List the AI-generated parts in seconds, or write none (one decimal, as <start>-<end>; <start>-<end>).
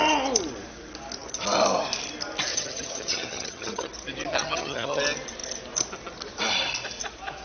2.5-3.9; 4.3-5.0